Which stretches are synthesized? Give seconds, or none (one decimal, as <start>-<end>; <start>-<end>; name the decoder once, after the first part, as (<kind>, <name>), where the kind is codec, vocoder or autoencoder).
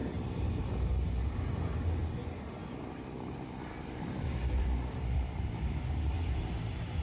0.0-0.6 (vocoder, BigVGAN v2); 2.0-5.9